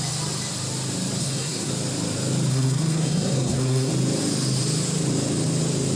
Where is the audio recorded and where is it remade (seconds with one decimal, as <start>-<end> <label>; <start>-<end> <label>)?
0.0-1.2 recorded; 1.2-1.7 remade; 1.7-2.5 recorded; 2.5-3.9 remade; 3.9-6.0 recorded